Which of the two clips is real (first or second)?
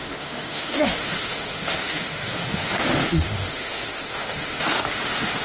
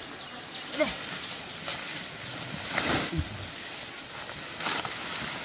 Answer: second